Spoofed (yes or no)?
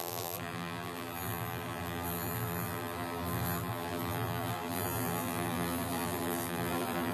yes